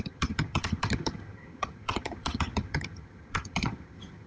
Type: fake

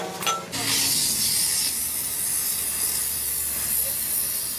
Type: real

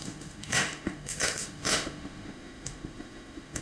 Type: fake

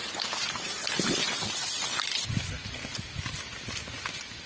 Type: real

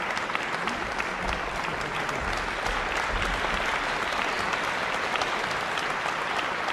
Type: real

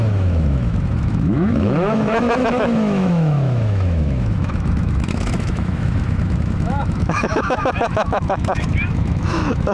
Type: fake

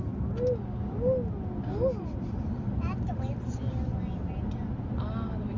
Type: real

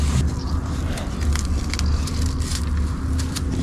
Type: real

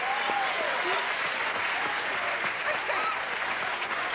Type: fake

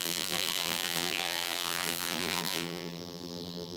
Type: fake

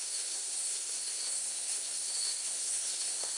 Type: fake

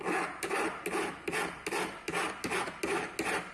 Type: real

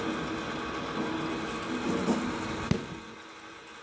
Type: real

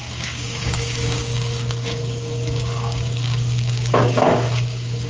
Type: fake